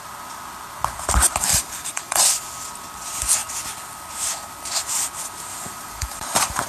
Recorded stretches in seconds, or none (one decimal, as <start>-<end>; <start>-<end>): 0.0-1.5; 2.2-5.5